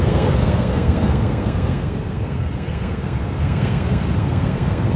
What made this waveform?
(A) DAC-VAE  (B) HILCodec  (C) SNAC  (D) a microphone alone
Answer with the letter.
C